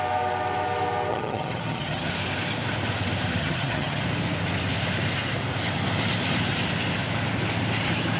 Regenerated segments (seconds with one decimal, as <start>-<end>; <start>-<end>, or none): 1.1-2.1; 3.4-4.0